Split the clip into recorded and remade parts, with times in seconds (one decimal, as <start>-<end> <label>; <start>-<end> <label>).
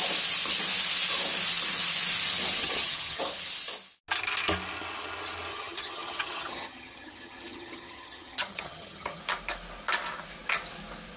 0.0-2.6 recorded; 2.6-3.2 remade; 3.2-5.5 recorded; 5.5-9.2 remade; 9.2-11.2 recorded